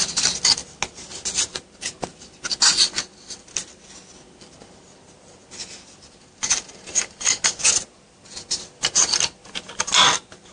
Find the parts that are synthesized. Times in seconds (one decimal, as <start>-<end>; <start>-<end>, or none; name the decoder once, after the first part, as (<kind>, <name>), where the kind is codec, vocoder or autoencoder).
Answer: none

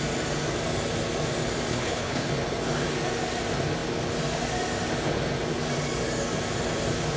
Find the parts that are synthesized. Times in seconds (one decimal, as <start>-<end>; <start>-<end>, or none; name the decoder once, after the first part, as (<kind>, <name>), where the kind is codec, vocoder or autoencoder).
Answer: 1.7-2.3 (codec, HILCodec)

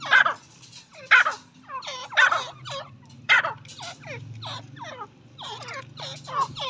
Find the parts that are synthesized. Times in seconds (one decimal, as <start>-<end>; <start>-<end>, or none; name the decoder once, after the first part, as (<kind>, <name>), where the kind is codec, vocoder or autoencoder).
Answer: none

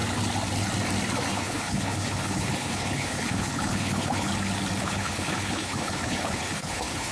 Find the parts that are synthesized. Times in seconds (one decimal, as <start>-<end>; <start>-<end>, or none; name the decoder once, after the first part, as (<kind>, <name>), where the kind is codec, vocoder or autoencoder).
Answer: 1.3-4.3 (codec, HILCodec); 4.8-7.1